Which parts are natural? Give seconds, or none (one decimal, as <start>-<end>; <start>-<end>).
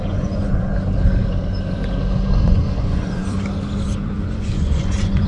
0.7-2.4; 3.2-4.2